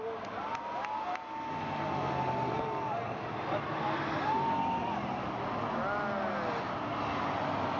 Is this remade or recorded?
recorded